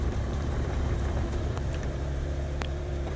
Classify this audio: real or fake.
fake